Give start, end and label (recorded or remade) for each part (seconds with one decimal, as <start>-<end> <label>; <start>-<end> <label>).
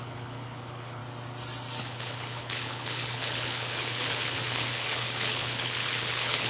0.0-1.0 remade; 1.0-1.8 recorded; 1.8-6.5 remade